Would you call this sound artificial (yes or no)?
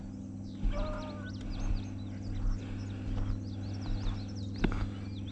no